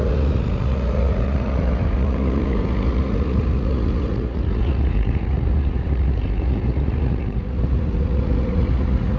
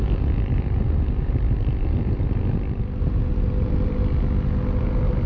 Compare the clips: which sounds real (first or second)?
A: second